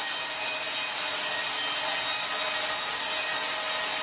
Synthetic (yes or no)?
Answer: no